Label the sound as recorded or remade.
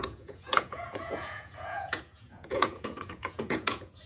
remade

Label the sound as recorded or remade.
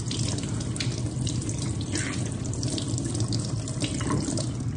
recorded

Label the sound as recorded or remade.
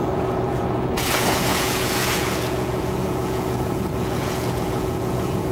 remade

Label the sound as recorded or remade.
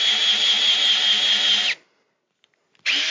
recorded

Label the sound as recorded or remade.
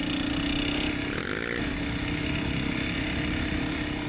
recorded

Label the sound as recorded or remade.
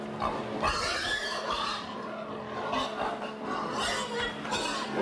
recorded